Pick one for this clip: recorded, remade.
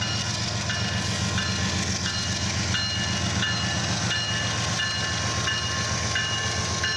recorded